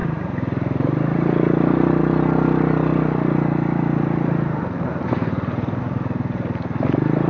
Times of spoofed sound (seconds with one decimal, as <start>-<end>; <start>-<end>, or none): 0.0-2.0; 4.9-5.8